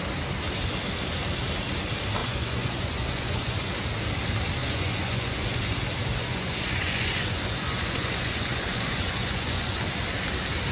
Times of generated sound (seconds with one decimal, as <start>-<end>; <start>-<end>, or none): 2.2-3.7; 4.6-5.6; 6.2-9.8